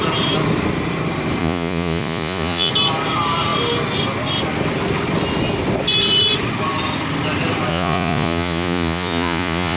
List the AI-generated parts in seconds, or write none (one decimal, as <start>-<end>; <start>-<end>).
1.4-2.7; 7.7-9.8